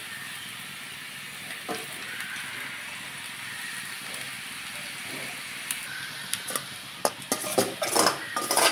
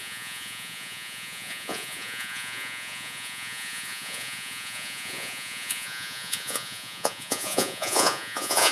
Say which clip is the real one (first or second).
first